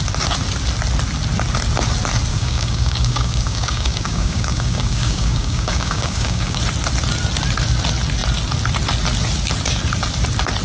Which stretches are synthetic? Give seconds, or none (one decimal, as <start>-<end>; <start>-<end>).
2.3-6.6